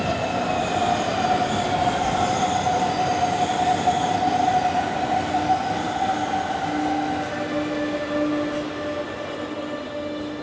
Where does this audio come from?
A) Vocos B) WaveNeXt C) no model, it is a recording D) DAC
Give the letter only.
C